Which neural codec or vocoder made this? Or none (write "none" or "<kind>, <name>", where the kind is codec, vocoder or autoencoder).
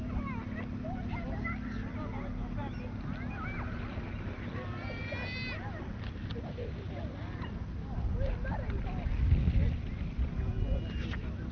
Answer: none